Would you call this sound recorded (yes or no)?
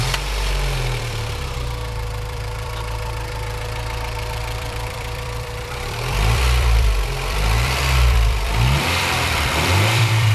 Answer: no